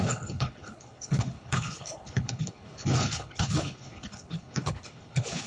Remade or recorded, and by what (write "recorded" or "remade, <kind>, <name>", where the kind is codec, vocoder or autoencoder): remade, codec, HILCodec